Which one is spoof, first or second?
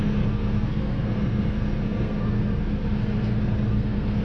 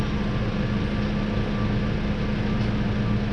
first